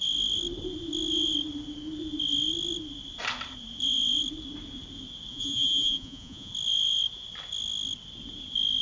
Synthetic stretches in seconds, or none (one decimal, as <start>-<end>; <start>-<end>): 5.3-6.5